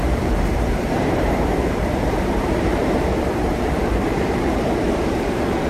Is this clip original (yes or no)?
no